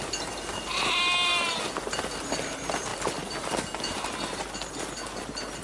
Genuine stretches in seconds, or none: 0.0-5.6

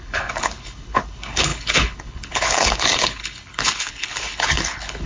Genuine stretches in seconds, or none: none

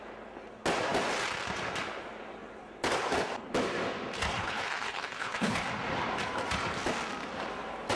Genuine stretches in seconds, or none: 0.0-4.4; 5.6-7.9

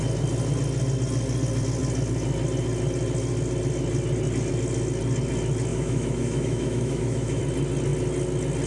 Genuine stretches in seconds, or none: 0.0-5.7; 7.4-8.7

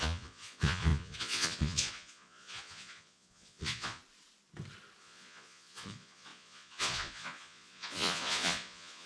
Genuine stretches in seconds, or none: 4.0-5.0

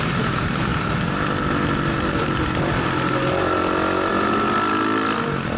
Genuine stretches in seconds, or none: 0.0-5.6